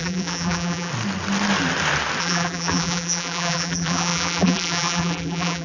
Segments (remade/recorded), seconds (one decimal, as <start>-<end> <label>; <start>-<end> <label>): 0.0-0.9 remade; 0.9-2.2 recorded; 2.2-5.6 remade